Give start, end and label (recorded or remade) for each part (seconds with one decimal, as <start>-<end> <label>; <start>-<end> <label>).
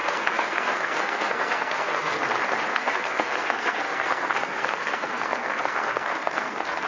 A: 0.0-2.2 remade; 2.2-2.7 recorded; 2.7-6.9 remade